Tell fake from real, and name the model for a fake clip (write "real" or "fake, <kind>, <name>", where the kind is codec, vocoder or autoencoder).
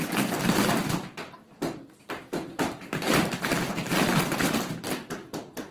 fake, vocoder, BigVGAN v2